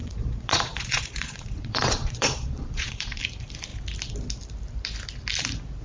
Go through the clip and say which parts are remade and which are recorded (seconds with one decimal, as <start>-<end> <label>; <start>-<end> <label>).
0.0-3.2 remade; 3.2-5.8 recorded